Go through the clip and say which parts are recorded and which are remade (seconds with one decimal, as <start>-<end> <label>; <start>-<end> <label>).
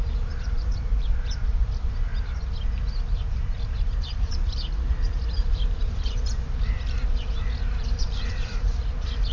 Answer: 0.0-2.1 remade; 2.1-3.1 recorded; 3.1-9.3 remade